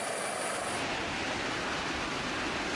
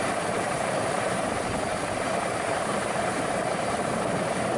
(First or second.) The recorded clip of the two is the first